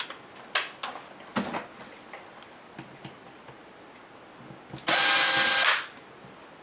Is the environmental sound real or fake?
real